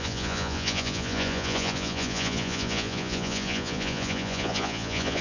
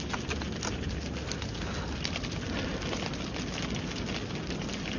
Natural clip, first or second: second